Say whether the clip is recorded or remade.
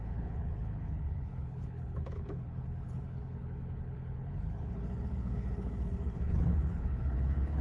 remade